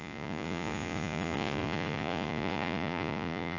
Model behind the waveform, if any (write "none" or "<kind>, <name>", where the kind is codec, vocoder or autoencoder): vocoder, Vocos